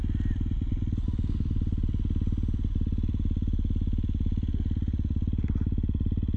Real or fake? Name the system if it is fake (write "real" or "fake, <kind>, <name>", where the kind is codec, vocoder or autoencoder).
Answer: real